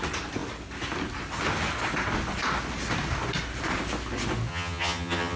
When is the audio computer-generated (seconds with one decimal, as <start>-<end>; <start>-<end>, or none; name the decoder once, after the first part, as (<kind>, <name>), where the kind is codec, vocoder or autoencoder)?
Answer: 4.5-5.4 (vocoder, HiFi-GAN)

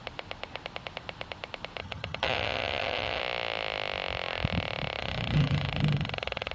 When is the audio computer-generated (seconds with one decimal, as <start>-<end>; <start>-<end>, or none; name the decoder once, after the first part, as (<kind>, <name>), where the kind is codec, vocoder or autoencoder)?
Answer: 1.8-3.2 (vocoder, HiFi-GAN); 5.0-6.5

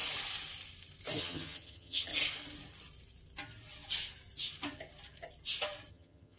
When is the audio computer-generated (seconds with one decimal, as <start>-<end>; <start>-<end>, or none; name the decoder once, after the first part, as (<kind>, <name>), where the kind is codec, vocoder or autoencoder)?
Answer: 1.2-2.1 (vocoder, HiFi-GAN); 5.9-6.4

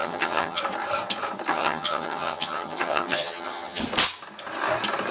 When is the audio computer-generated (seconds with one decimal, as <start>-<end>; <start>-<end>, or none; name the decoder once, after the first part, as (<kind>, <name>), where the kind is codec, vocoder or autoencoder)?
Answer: 0.0-0.6 (vocoder, HiFi-GAN); 1.5-3.8

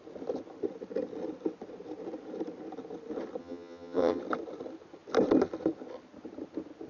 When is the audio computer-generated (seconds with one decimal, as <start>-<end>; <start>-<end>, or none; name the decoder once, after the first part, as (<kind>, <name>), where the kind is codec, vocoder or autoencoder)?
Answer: 3.4-4.2 (vocoder, HiFi-GAN)

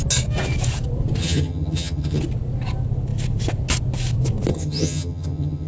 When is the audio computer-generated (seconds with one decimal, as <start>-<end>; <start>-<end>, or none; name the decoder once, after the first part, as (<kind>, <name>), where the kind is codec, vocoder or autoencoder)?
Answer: 1.2-2.2 (vocoder, HiFi-GAN); 4.5-5.7